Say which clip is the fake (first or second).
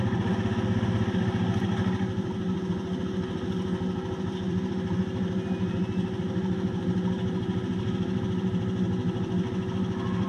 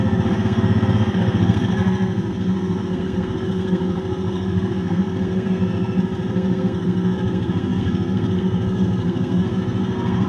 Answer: second